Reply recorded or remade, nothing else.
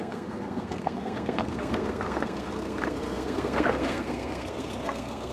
remade